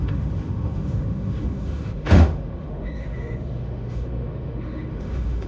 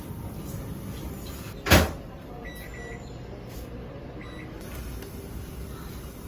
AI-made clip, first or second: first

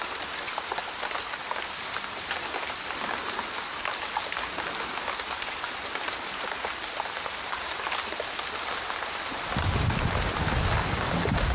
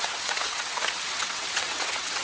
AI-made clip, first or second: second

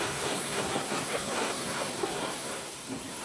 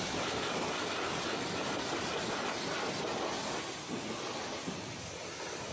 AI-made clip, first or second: first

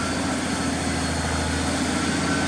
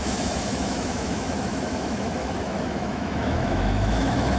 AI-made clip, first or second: second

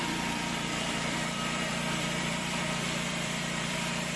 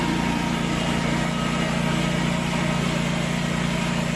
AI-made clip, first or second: first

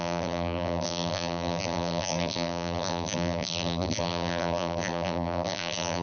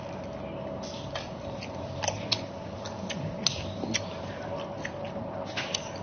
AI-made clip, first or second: first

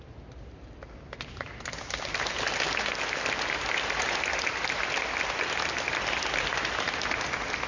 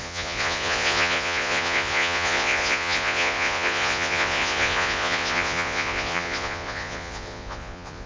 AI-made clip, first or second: second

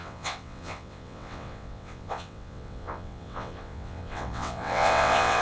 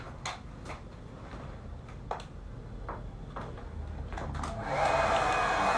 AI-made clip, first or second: first